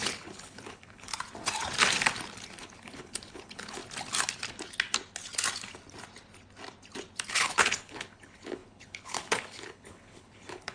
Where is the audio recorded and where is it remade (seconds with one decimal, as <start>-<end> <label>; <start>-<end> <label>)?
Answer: 0.0-1.1 remade; 1.1-2.6 recorded; 2.6-3.8 remade; 3.8-7.3 recorded; 7.3-10.7 remade

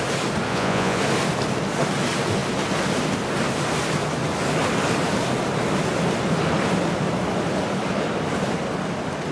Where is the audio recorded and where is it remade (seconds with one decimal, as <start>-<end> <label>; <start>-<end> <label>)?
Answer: 0.0-0.5 recorded; 0.5-1.0 remade; 1.0-9.3 recorded

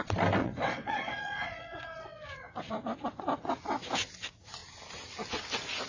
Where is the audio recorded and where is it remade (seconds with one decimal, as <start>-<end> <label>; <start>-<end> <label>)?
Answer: 0.0-0.4 recorded; 0.4-3.9 remade; 3.9-5.9 recorded

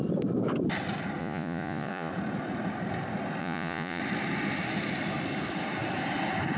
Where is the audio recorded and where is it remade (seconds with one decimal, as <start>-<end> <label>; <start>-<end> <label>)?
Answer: 0.0-1.2 recorded; 1.2-2.1 remade; 2.1-3.4 recorded; 3.4-4.0 remade; 4.0-6.6 recorded